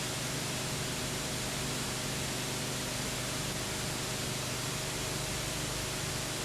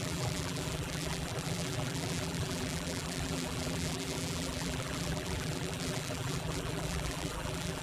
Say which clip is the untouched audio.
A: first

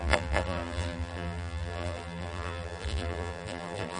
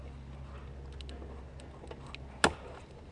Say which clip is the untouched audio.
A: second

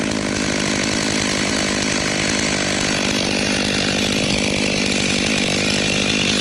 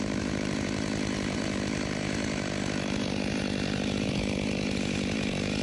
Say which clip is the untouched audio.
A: first